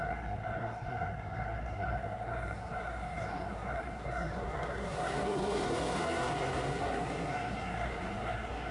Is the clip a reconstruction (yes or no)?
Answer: yes